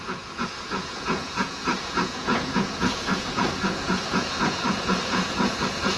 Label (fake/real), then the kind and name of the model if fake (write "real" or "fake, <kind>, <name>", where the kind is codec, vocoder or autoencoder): fake, vocoder, Vocos